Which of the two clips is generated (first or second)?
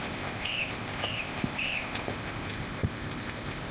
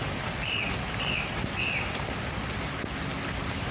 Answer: first